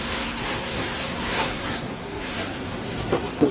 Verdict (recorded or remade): remade